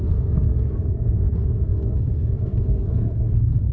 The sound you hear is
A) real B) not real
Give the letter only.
B